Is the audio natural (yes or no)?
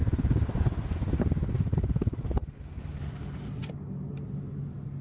yes